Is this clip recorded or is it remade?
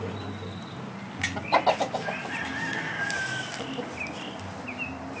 recorded